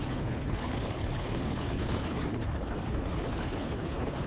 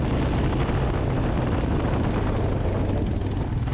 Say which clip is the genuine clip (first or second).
second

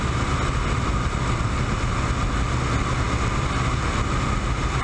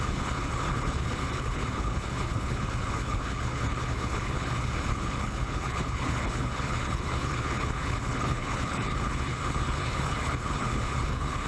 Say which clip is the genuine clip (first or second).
first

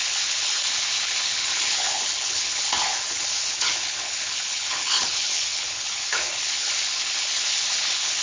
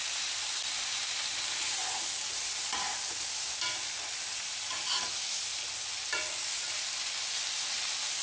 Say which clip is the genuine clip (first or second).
second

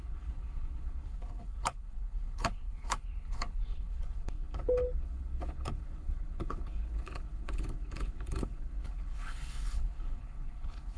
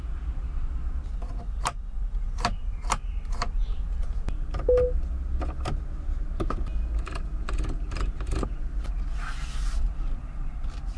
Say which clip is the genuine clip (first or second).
second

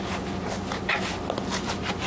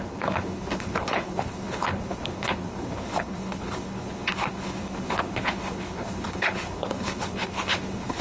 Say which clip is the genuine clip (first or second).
first